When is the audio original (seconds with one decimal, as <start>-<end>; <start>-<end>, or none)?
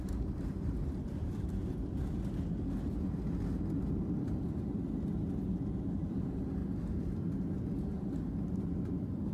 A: 1.6-5.5; 6.6-7.8